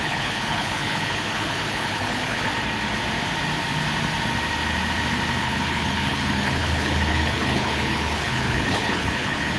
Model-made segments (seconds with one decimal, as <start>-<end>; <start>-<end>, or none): 0.0-2.5; 5.4-9.6